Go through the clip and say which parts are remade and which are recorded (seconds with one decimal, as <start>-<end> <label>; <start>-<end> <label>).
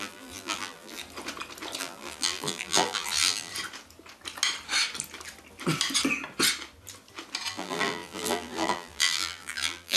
0.0-1.0 remade; 1.0-1.8 recorded; 1.8-3.5 remade; 3.5-7.5 recorded; 7.5-10.0 remade